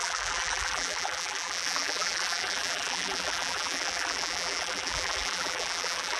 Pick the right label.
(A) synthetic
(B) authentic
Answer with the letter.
A